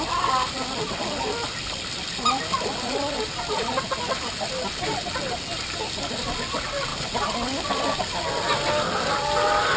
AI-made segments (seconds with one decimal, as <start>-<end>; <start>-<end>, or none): none